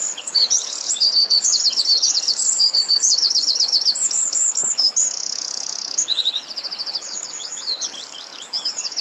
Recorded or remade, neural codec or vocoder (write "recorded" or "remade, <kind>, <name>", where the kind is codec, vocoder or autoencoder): remade, codec, HILCodec